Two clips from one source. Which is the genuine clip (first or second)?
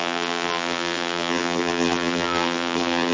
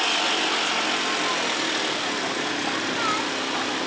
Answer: second